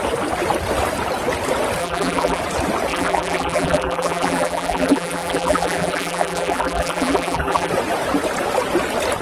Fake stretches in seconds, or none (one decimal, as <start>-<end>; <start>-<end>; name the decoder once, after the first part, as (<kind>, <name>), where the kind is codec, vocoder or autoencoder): 1.8-2.4 (vocoder, BigVGAN v2); 2.9-7.7